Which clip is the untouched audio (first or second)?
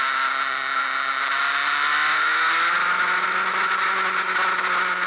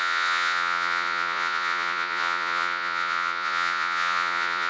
first